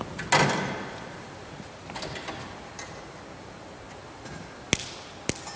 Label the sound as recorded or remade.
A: recorded